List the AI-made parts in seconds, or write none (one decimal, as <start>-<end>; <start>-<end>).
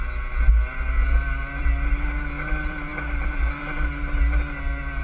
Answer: none